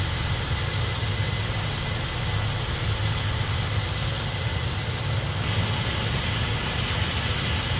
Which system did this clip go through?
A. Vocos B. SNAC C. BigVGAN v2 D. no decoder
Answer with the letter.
D